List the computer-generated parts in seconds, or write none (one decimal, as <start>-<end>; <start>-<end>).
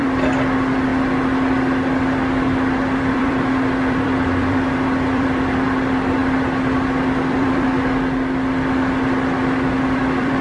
0.0-0.9; 3.0-10.4